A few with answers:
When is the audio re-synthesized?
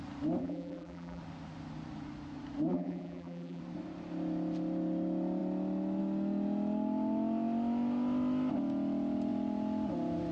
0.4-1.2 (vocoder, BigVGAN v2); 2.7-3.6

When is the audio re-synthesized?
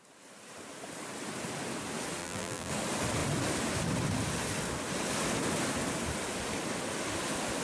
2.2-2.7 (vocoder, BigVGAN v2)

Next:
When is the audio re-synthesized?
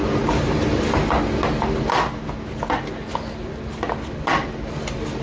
0.0-1.1 (vocoder, BigVGAN v2)